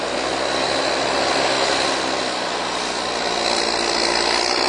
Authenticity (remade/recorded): recorded